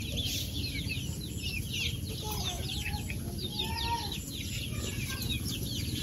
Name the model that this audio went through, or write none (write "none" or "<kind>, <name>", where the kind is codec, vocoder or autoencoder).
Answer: none